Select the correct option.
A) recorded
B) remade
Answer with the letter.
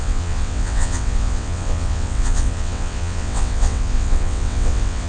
B